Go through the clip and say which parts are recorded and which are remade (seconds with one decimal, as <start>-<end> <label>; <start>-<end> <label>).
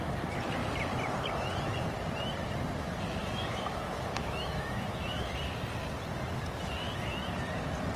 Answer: 0.0-3.2 recorded; 3.2-5.3 remade; 5.3-8.0 recorded